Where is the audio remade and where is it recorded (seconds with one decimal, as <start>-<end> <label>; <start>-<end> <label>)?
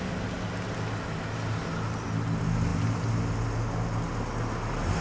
0.0-5.0 recorded